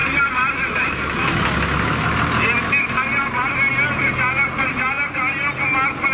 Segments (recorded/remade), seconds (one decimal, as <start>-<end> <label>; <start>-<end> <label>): 0.0-6.1 recorded